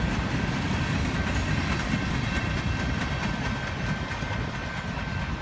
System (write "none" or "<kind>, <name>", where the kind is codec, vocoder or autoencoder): none